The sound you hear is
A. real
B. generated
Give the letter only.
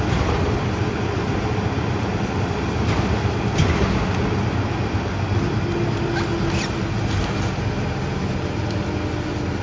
A